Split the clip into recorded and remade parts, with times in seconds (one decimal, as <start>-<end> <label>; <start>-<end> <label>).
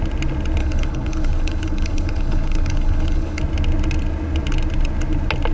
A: 0.0-0.6 recorded; 0.6-3.4 remade; 3.4-5.5 recorded